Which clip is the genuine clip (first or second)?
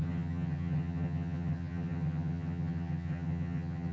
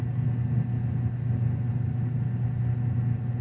second